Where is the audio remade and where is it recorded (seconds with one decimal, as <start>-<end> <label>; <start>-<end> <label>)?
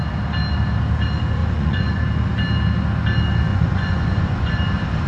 0.0-1.4 recorded; 1.4-2.0 remade; 2.0-3.5 recorded; 3.5-4.5 remade; 4.5-5.1 recorded